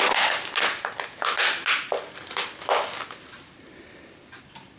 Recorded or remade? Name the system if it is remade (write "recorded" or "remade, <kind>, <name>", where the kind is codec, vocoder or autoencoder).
recorded